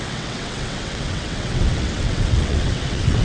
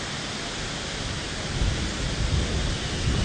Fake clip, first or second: first